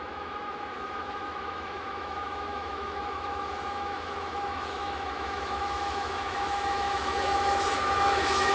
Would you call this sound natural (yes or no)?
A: no